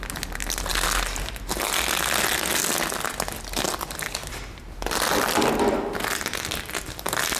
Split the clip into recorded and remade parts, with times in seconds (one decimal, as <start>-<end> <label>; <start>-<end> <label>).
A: 0.0-7.4 recorded